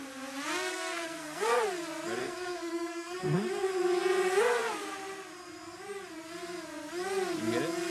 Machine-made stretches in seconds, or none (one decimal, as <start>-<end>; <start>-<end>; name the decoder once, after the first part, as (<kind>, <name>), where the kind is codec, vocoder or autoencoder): 0.7-1.6 (codec, SNAC); 2.2-3.7